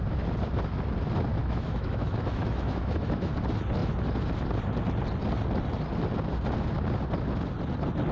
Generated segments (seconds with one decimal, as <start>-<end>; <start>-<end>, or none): 1.4-3.3